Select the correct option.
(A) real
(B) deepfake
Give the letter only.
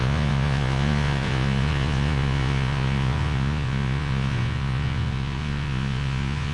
B